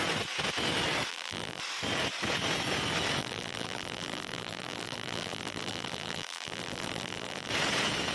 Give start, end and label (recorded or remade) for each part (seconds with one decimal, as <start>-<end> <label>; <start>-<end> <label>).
0.0-1.1 recorded; 1.1-1.6 remade; 1.6-3.2 recorded; 3.2-7.5 remade; 7.5-8.1 recorded